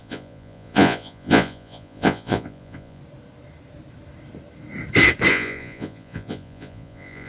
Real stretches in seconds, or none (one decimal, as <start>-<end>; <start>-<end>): 3.0-5.3